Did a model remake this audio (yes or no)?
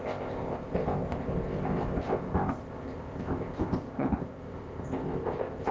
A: yes